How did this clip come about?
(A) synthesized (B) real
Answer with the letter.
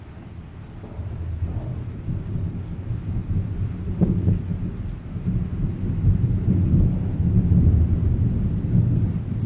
B